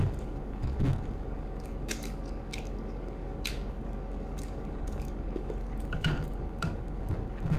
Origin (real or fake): fake